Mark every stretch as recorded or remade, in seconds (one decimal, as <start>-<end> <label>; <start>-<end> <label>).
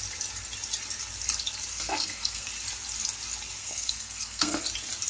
0.0-1.7 recorded; 1.7-2.5 remade; 2.5-3.6 recorded; 3.6-4.6 remade; 4.6-5.1 recorded